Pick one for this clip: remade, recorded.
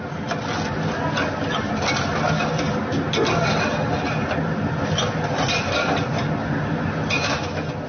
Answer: recorded